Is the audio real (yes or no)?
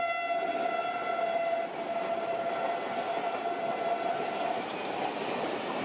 yes